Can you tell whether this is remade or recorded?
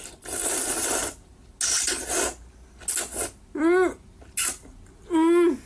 recorded